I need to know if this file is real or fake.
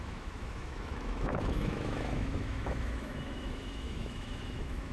fake